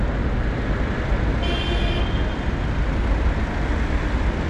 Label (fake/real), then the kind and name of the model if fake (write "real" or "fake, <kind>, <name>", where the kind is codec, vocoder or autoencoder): real